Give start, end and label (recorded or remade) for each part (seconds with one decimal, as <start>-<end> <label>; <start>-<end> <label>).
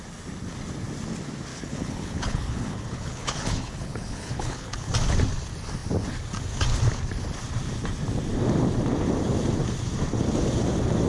0.0-1.5 recorded; 1.5-4.9 remade; 4.9-11.1 recorded